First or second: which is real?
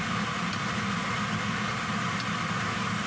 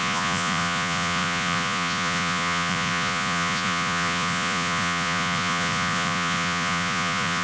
first